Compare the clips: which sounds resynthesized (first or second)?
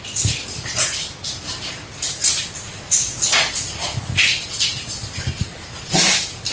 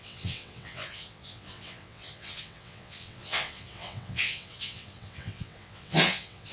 second